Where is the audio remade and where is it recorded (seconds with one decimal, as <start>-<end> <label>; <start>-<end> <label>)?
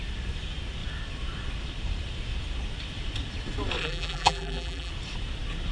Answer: 0.0-3.8 recorded; 3.8-4.9 remade; 4.9-5.7 recorded